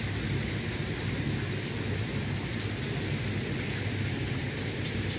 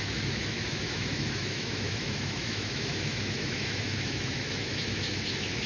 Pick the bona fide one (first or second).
first